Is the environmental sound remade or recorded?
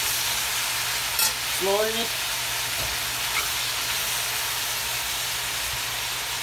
recorded